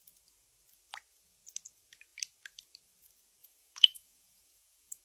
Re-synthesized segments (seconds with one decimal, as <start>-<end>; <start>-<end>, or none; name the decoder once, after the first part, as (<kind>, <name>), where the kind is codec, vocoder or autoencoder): 3.4-5.0 (vocoder, Vocos)